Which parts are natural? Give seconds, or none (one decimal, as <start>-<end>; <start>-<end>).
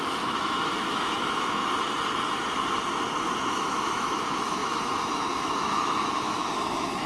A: 1.6-3.5